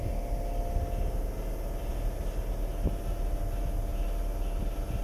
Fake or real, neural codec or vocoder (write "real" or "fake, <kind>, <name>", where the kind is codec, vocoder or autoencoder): real